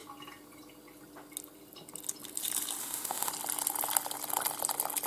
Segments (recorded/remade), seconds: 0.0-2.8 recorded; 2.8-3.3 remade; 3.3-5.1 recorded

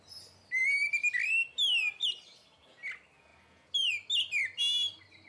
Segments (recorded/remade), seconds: 0.0-5.3 recorded

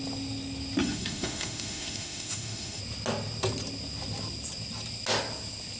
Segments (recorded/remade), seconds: 0.0-0.8 recorded; 0.8-2.8 remade; 2.8-5.8 recorded

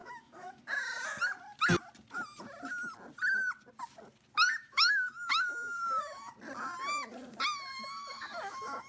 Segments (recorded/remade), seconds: 0.0-0.6 remade; 0.6-4.6 recorded; 4.6-6.3 remade; 6.3-7.7 recorded; 7.7-8.9 remade

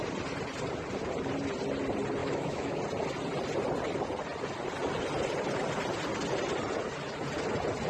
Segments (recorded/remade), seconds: 0.0-2.2 recorded; 2.2-2.8 remade; 2.8-7.9 recorded